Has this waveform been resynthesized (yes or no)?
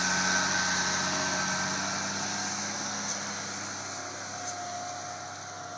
no